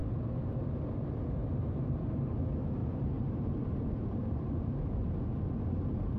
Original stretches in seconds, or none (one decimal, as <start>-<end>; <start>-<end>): 0.0-1.4; 2.3-2.8; 4.8-6.2